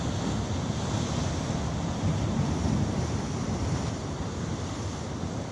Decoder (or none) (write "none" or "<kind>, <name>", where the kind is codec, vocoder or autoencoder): none